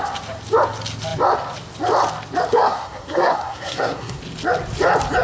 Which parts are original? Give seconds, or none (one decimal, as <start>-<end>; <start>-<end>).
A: 0.0-2.5; 4.2-5.2